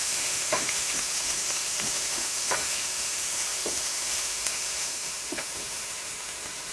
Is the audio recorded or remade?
remade